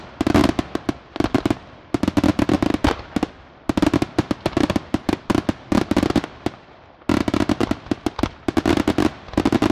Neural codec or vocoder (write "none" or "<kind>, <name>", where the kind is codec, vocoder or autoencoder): none